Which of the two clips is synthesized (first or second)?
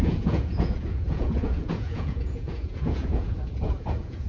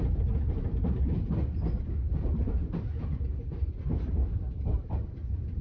first